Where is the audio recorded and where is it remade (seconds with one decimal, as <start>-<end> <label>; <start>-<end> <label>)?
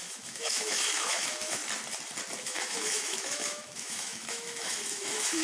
0.0-1.6 remade; 1.6-2.4 recorded; 2.4-5.4 remade